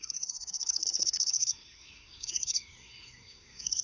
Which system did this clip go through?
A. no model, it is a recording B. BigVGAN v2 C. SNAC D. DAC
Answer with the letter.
C